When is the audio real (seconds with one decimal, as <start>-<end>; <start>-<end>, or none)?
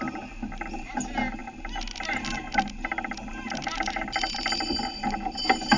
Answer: 0.0-5.8